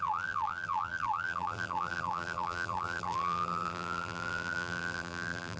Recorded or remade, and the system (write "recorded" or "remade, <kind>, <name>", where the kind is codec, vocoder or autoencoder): remade, vocoder, BigVGAN v2